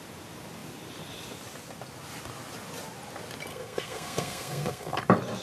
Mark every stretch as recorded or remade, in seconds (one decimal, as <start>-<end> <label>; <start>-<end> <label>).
0.0-3.5 recorded; 3.5-5.0 remade; 5.0-5.4 recorded